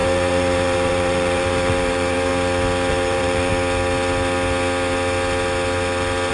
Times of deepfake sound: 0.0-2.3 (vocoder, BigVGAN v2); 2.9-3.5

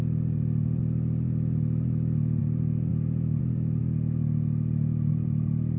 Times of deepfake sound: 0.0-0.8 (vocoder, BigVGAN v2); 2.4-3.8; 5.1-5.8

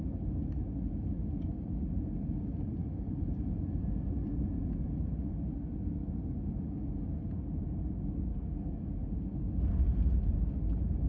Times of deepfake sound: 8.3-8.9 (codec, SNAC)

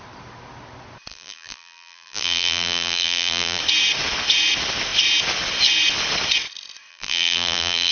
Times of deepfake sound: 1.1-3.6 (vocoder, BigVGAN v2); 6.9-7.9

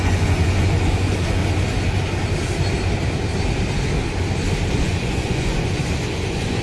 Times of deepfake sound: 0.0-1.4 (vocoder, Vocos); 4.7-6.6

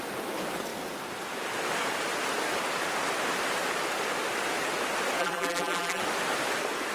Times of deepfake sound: 5.2-6.0 (vocoder, BigVGAN v2)

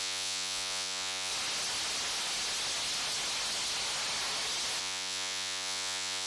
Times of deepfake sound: 0.0-1.3 (vocoder, Vocos); 4.8-6.3